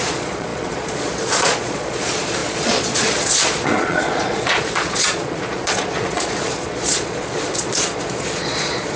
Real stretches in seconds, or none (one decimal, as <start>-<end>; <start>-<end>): none